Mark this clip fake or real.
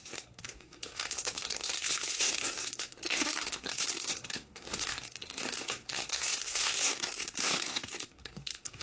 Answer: fake